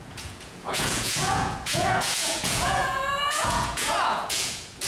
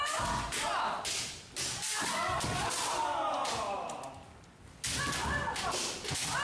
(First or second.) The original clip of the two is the second